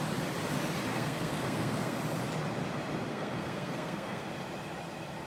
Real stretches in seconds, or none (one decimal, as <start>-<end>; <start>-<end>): 0.0-0.9; 2.0-3.1; 4.3-5.3